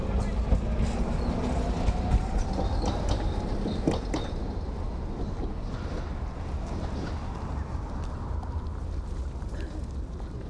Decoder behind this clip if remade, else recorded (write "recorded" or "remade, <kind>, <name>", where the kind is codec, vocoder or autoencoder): recorded